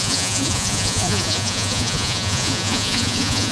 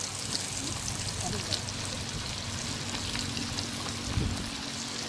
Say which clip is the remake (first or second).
first